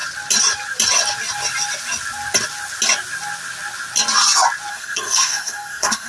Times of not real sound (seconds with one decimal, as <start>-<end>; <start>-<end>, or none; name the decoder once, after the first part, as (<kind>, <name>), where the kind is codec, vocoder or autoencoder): 4.7-6.1 (codec, SNAC)